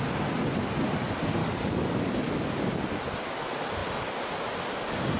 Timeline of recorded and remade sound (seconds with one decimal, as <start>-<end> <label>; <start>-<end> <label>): 0.0-1.4 recorded; 1.4-2.3 remade; 2.3-5.2 recorded